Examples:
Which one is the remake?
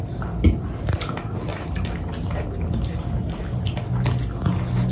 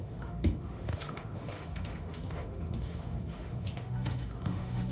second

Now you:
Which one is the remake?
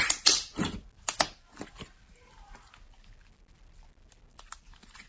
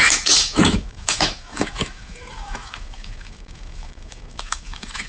second